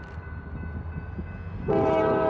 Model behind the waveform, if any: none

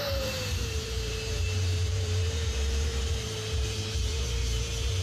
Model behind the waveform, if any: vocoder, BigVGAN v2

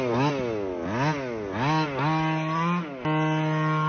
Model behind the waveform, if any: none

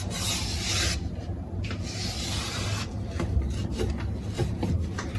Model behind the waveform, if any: none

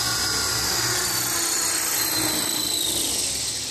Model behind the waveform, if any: none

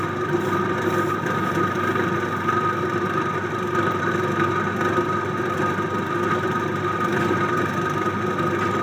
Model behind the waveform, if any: none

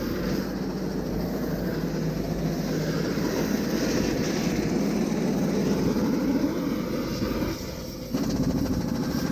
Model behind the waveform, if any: none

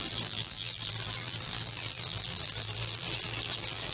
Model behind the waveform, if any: vocoder, BigVGAN v2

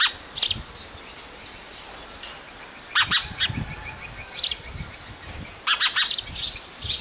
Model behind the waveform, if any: none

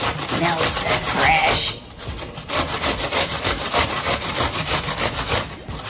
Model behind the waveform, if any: vocoder, BigVGAN v2